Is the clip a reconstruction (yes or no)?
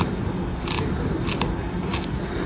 no